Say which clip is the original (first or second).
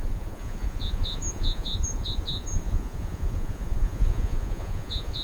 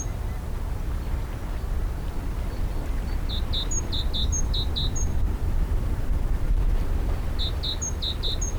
second